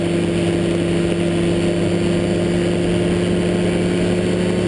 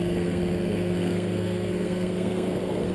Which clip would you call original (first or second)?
first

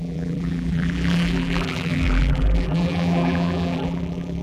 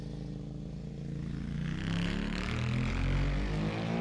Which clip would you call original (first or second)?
second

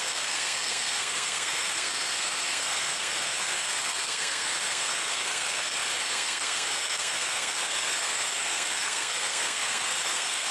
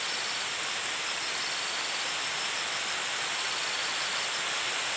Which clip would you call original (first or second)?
second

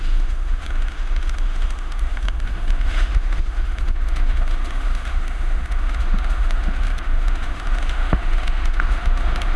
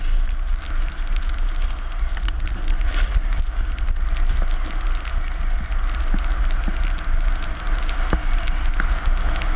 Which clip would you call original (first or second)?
second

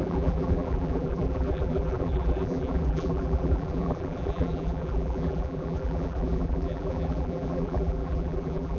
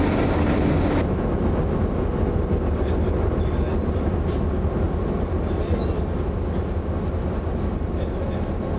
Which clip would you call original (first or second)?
second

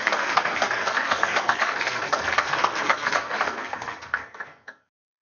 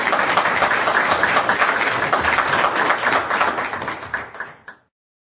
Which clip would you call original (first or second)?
second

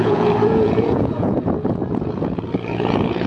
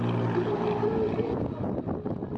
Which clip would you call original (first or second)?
second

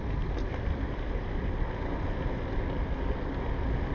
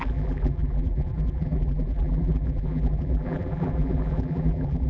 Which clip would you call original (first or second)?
first